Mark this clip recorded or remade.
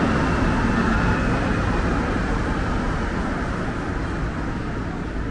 recorded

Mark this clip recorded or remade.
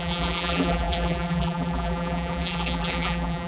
remade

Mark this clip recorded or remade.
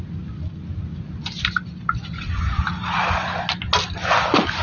recorded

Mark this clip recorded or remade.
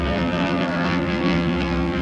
remade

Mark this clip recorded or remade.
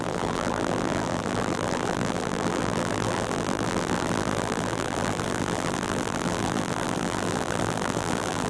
remade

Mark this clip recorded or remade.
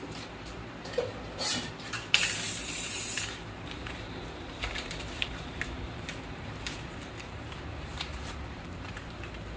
remade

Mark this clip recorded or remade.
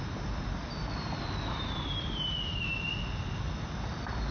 recorded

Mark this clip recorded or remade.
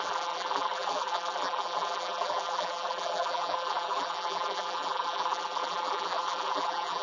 remade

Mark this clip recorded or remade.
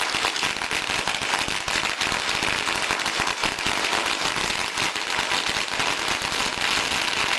recorded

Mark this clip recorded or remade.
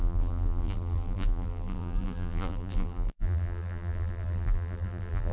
remade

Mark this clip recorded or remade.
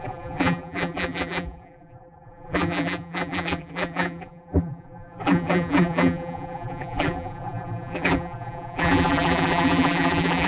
remade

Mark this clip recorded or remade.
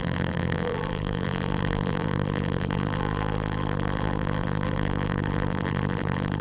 remade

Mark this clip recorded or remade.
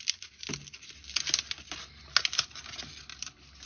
recorded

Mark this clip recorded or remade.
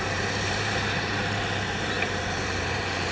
remade